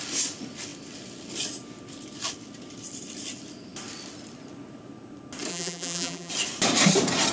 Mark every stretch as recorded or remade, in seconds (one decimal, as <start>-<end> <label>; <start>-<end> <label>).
0.0-5.5 recorded; 5.5-6.3 remade; 6.3-7.3 recorded